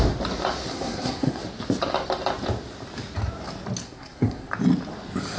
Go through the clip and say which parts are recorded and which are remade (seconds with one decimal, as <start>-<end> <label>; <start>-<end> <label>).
0.0-0.7 recorded; 0.7-1.4 remade; 1.4-3.8 recorded; 3.8-4.5 remade; 4.5-5.4 recorded